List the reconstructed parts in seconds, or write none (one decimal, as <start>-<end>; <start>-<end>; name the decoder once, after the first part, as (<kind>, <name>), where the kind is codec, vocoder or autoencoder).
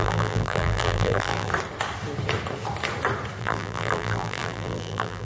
0.0-1.5 (vocoder, BigVGAN v2); 3.4-5.2